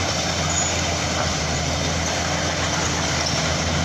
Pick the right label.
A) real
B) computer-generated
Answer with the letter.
A